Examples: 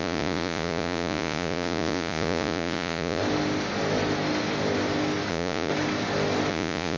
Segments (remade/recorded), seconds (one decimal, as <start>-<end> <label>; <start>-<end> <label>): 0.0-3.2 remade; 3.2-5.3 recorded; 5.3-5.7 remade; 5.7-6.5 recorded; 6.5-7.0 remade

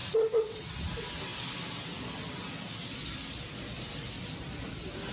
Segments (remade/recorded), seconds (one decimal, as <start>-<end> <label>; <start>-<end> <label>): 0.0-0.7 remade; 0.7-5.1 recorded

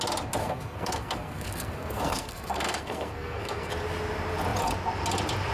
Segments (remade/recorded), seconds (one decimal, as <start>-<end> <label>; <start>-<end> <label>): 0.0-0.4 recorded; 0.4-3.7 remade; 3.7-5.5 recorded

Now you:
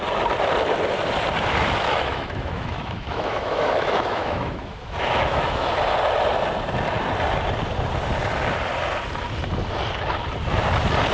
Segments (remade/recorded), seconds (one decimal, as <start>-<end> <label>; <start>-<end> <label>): 0.0-1.9 recorded; 1.9-5.7 remade; 5.7-11.1 recorded